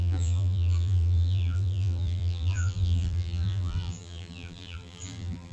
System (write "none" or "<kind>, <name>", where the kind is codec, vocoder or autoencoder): vocoder, BigVGAN v2